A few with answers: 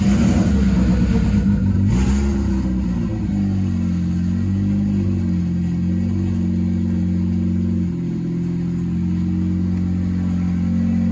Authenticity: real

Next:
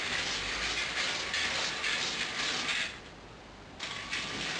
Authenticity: real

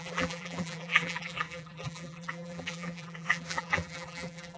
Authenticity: fake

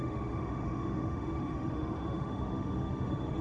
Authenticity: fake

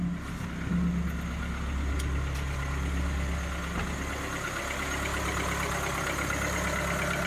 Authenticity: real